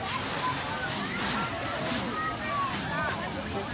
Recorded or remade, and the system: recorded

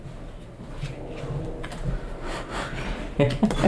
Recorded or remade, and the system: recorded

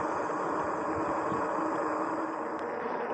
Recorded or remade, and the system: recorded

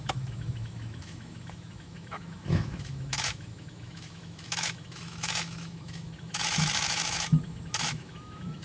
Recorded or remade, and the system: remade, autoencoder, DAC-VAE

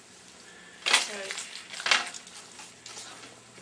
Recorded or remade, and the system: recorded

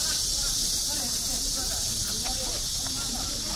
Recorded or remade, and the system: recorded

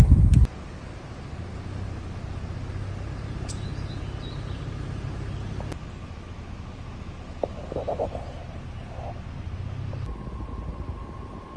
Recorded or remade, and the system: recorded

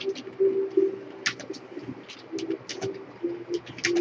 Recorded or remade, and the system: recorded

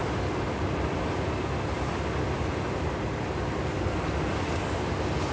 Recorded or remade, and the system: recorded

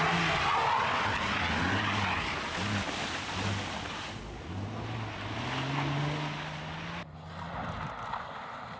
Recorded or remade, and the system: recorded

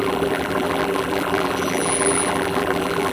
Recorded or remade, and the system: remade, vocoder, BigVGAN v2